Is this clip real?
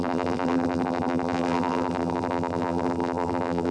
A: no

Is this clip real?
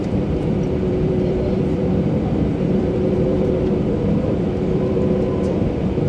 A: no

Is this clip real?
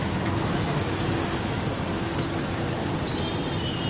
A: yes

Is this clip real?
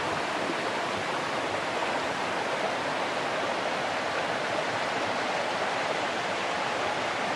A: yes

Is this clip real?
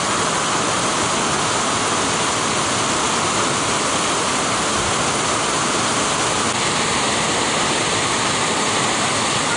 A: yes